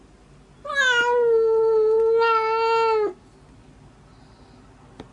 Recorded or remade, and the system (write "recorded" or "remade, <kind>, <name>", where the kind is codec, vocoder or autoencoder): recorded